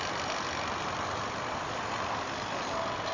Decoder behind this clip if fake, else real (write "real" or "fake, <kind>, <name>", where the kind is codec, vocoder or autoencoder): real